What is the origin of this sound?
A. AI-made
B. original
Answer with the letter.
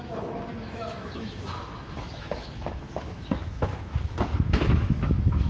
A